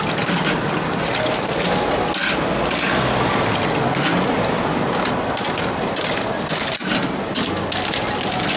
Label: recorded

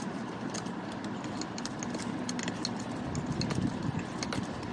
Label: recorded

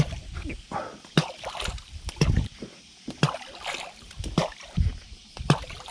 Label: remade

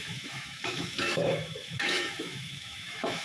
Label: remade